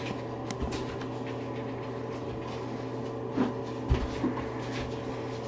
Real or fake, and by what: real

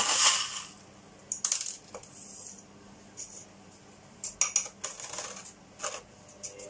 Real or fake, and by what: real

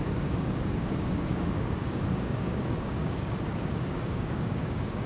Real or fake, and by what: fake, codec, DAC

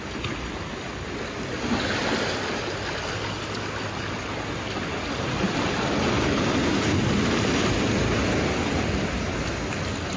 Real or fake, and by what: real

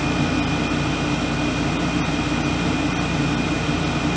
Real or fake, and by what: real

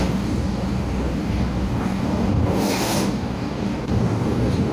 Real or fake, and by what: fake, codec, DAC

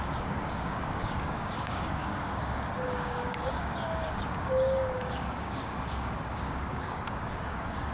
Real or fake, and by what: fake, codec, DAC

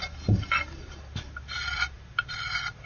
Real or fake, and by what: real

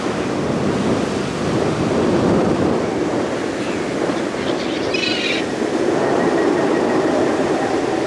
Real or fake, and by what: real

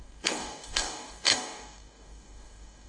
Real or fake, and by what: fake, codec, DAC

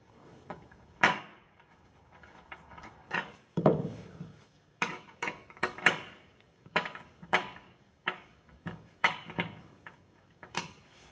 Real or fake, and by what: fake, codec, DAC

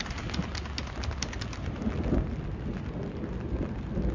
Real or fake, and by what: real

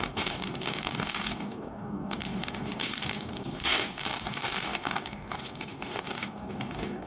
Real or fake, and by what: fake, codec, DAC